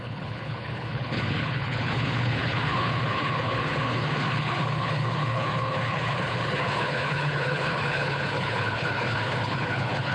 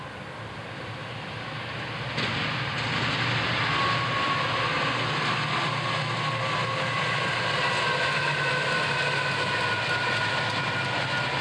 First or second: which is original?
second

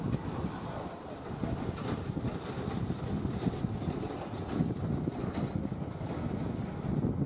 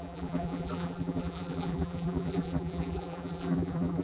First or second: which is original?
first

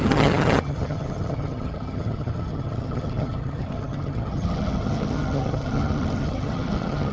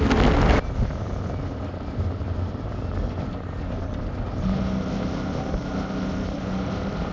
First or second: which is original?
second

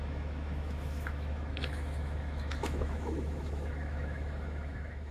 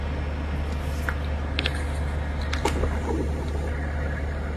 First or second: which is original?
second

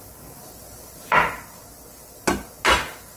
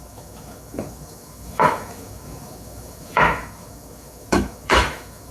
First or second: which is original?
first